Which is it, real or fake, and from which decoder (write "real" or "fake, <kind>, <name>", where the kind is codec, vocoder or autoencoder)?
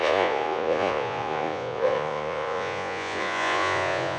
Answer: fake, vocoder, Vocos